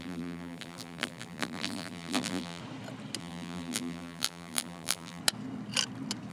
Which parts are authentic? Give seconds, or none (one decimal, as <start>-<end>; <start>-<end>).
2.6-3.2; 5.2-6.3